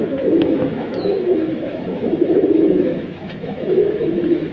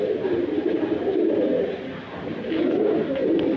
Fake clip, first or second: first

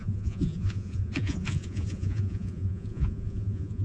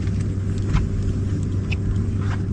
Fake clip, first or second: first